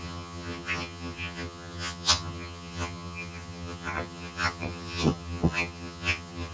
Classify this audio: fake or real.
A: fake